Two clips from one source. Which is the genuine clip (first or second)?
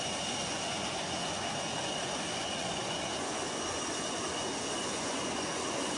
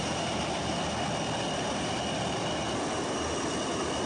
second